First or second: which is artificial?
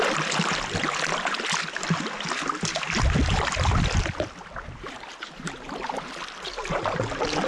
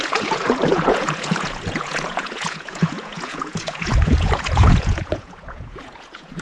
second